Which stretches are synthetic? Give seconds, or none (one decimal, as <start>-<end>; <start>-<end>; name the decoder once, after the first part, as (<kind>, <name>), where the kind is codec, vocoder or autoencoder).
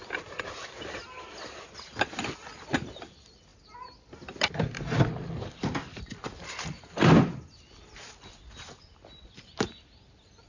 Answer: none